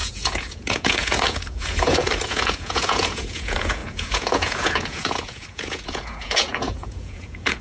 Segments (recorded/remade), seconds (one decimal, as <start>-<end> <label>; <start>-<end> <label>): 0.0-7.6 remade